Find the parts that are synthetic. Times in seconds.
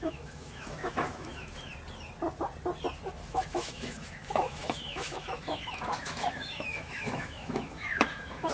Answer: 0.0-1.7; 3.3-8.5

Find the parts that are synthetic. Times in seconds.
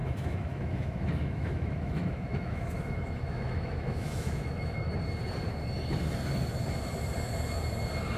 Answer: 0.0-4.9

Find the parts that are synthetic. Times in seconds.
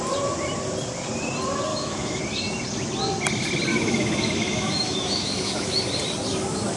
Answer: 1.7-2.2; 3.7-5.8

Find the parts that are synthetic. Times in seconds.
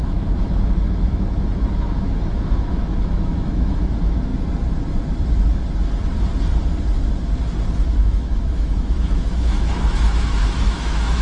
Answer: 0.0-4.3; 8.0-11.2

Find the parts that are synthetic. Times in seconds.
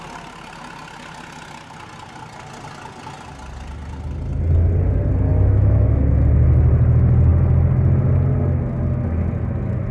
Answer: 5.3-6.0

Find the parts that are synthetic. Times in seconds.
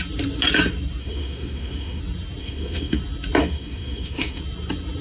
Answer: 1.0-2.0; 2.4-3.0; 3.4-4.4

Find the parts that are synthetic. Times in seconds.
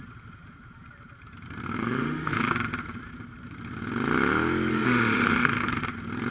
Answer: 1.8-2.5; 4.7-5.8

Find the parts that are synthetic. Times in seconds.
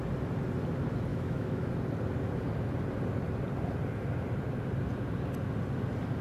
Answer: 1.1-1.7